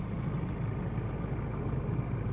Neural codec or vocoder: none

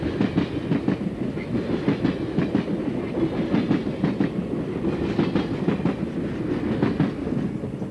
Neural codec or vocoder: none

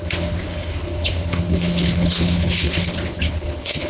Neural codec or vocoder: codec, HILCodec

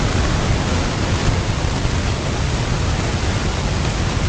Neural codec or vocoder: none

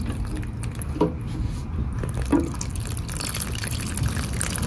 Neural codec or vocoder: none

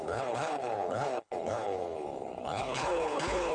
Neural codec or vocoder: codec, HILCodec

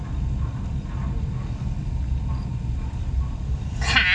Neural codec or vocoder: none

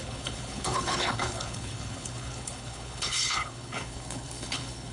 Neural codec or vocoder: codec, HILCodec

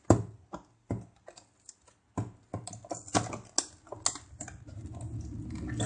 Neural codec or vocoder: none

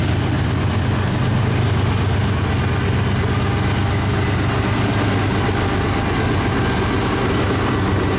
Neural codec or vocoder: none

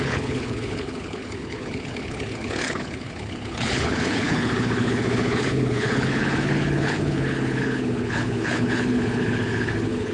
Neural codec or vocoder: codec, HILCodec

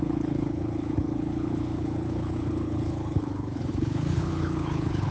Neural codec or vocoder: codec, HILCodec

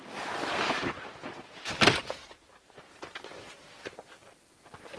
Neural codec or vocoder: none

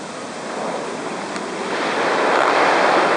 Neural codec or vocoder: none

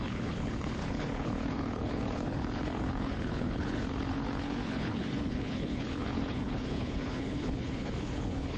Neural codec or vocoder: codec, HILCodec